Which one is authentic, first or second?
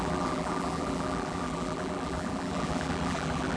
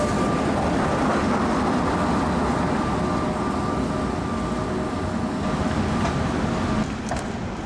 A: second